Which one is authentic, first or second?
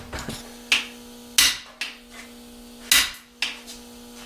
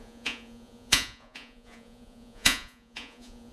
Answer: first